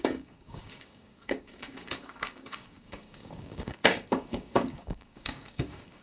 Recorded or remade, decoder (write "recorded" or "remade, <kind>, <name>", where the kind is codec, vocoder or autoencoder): remade, codec, DAC